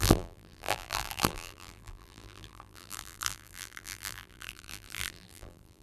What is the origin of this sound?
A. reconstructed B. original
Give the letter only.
A